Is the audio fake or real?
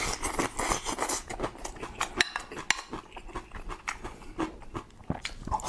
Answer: real